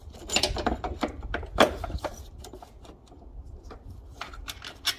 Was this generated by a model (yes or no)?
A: yes